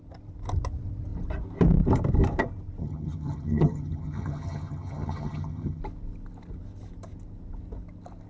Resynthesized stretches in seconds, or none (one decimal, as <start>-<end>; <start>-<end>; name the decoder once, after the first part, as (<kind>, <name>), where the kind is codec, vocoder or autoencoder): 2.8-5.8 (vocoder, HiFi-GAN)